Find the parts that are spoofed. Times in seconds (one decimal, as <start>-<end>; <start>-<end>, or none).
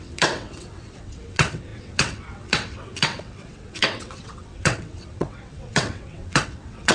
0.0-6.9